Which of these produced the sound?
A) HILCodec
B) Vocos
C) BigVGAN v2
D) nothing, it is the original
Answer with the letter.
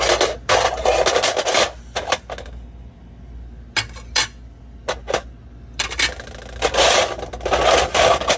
D